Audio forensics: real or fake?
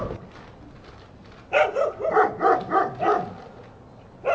real